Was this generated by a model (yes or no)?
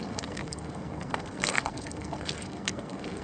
yes